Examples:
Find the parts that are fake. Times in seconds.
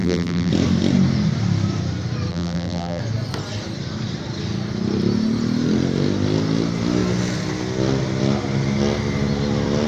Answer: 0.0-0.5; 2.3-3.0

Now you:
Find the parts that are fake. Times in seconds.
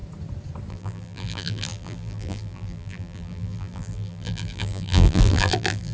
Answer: 0.7-5.9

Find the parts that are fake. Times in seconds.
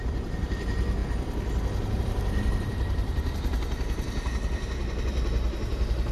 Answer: 0.0-1.0; 2.0-6.1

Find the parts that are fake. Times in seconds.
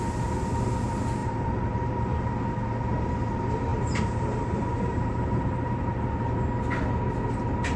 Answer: 1.2-2.3; 3.7-5.9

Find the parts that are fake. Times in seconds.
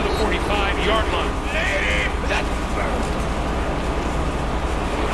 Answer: 0.7-1.7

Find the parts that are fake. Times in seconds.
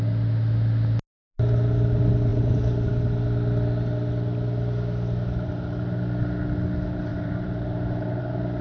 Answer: 2.3-2.9; 7.1-8.2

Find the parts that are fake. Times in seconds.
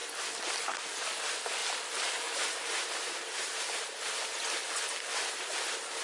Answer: 1.6-4.0